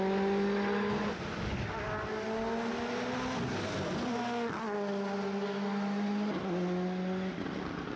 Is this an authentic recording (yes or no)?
yes